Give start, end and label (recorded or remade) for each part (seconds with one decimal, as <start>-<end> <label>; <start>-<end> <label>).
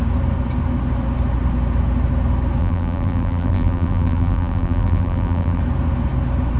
0.0-2.6 recorded; 2.6-5.6 remade; 5.6-6.6 recorded